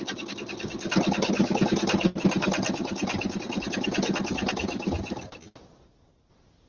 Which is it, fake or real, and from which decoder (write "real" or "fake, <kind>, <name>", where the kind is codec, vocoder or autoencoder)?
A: real